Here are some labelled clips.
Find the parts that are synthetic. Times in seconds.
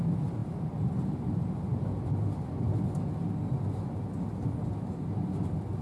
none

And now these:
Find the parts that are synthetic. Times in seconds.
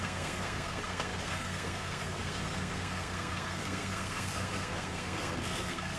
0.0-6.0 (codec, SNAC)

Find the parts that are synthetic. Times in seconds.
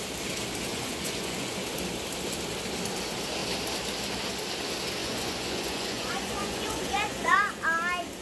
0.7-1.6 (vocoder, Vocos); 5.0-7.6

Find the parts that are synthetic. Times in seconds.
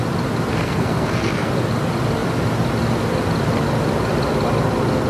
0.5-1.5 (codec, SNAC)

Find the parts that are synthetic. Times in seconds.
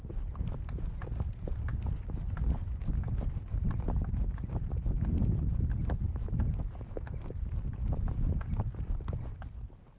none